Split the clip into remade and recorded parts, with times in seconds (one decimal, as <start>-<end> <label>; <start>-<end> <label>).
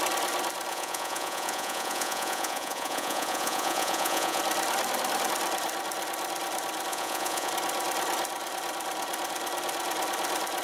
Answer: 0.0-0.7 recorded; 0.7-4.4 remade; 4.4-6.9 recorded; 6.9-7.5 remade; 7.5-10.6 recorded